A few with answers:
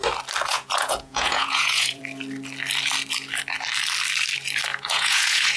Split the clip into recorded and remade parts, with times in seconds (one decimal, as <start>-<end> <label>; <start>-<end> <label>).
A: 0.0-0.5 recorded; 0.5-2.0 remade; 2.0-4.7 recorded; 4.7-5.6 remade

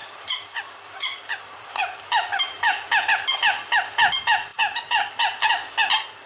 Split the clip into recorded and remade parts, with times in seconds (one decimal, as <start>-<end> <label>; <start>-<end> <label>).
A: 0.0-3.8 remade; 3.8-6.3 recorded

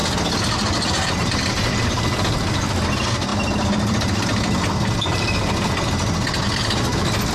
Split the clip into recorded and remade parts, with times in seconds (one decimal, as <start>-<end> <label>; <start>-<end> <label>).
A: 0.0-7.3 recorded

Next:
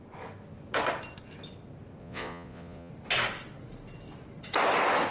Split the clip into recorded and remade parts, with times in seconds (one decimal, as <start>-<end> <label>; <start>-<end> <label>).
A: 0.0-2.0 recorded; 2.0-2.9 remade; 2.9-5.1 recorded